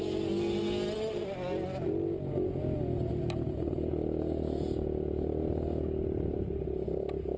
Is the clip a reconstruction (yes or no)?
no